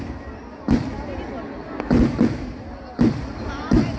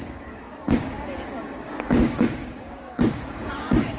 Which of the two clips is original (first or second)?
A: first